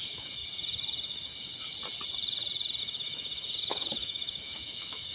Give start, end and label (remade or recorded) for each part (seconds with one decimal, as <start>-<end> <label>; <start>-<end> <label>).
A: 0.0-0.4 remade; 0.4-2.8 recorded; 2.8-5.1 remade